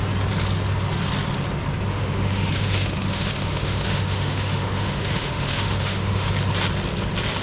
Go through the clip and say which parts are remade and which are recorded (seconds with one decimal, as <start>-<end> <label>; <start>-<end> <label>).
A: 0.0-1.9 recorded; 1.9-6.3 remade; 6.3-7.4 recorded